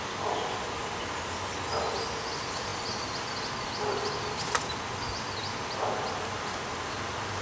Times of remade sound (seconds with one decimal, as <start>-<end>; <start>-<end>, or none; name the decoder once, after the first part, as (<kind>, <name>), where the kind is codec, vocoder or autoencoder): none